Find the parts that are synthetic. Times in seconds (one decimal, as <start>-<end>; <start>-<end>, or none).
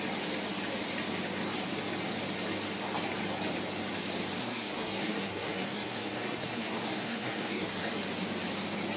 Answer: 4.4-7.9